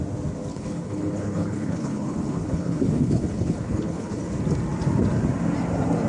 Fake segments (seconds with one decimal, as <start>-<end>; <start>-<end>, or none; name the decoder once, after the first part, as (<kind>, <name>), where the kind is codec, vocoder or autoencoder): 0.5-4.2 (codec, HILCodec)